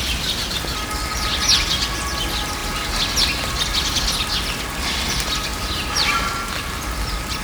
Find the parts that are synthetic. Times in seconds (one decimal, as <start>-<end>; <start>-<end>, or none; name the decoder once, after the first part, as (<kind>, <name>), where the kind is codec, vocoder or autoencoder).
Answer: 5.5-6.3 (vocoder, BigVGAN v2)